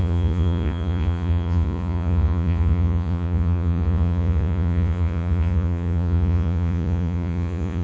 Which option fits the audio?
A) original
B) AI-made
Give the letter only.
B